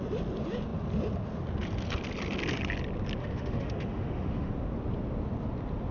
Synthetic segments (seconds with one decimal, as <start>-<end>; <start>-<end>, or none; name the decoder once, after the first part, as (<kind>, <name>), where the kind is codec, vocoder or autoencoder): 3.2-4.5 (autoencoder, DAC-VAE)

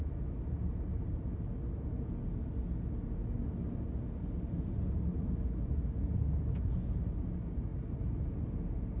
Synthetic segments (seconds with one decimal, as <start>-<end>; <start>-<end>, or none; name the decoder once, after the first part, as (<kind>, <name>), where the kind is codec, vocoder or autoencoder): none

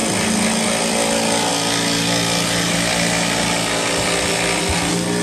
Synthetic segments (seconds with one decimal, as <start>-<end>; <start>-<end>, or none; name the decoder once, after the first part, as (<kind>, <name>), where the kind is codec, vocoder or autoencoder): none

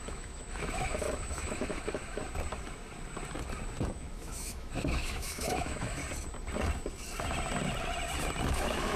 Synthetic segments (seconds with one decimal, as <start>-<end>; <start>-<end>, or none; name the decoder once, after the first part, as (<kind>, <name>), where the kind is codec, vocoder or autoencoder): 0.0-2.2 (autoencoder, DAC-VAE); 3.8-6.0; 8.5-9.0

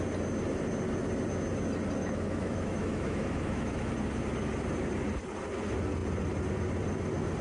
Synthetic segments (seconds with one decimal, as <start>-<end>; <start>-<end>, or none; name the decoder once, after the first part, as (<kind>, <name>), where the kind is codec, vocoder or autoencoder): 2.0-3.9 (autoencoder, DAC-VAE)